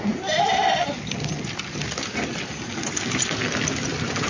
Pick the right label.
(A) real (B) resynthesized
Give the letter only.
A